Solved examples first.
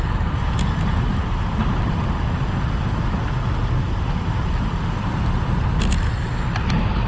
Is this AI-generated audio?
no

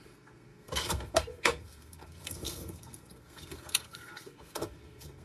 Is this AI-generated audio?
yes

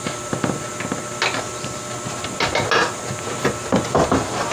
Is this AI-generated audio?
no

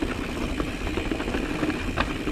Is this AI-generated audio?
no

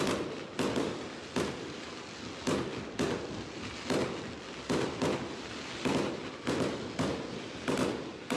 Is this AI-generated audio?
no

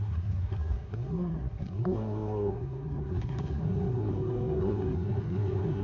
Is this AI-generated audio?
yes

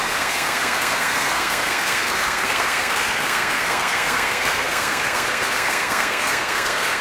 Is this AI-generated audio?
yes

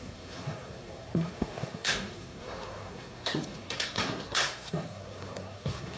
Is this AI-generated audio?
yes